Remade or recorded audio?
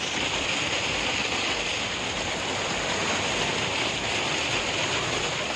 recorded